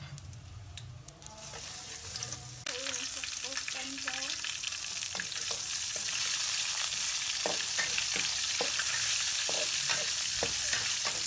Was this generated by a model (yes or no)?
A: no